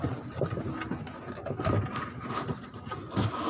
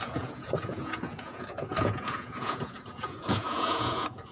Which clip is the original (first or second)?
first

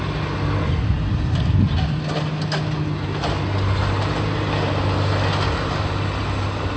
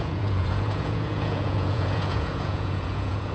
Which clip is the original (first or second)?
first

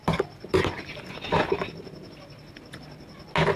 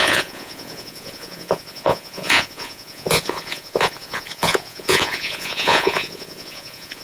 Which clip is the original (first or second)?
first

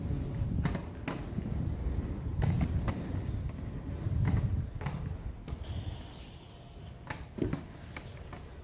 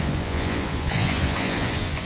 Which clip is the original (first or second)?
first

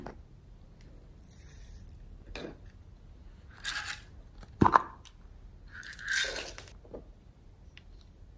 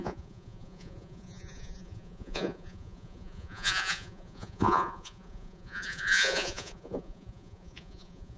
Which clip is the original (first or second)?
first